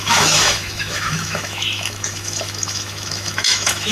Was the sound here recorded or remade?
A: remade